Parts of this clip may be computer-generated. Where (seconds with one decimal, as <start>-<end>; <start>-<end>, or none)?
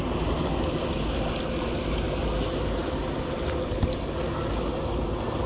none